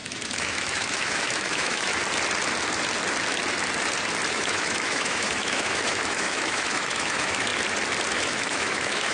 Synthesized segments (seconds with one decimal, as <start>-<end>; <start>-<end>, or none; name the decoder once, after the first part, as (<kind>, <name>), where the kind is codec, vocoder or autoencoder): 0.0-1.9 (autoencoder, DAC-VAE); 4.3-7.5; 8.1-9.1